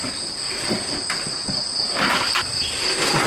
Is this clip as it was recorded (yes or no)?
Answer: yes